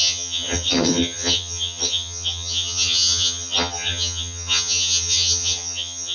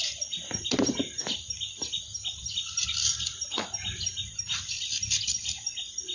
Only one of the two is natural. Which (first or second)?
second